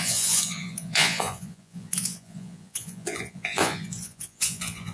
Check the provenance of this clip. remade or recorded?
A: remade